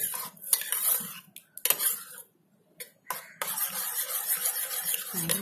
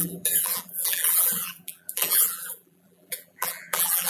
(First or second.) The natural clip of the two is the first